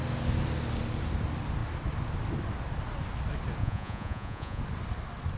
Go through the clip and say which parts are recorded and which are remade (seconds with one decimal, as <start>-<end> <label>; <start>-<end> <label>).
0.0-3.6 recorded; 3.6-4.6 remade; 4.6-5.4 recorded